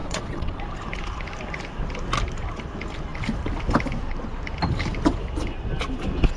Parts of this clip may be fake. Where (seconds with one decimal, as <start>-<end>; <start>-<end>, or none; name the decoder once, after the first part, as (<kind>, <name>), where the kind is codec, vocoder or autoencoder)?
0.0-0.6 (vocoder, WaveNeXt)

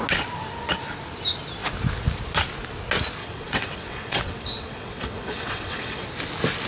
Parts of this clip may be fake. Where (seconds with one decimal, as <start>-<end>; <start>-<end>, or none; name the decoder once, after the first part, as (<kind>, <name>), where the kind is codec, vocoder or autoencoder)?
3.2-6.1 (vocoder, WaveNeXt)

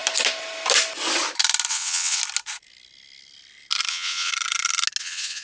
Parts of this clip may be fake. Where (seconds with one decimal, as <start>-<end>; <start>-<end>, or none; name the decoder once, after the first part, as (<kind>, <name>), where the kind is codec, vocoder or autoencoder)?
1.7-2.2 (vocoder, WaveNeXt); 3.9-4.3; 5.0-5.4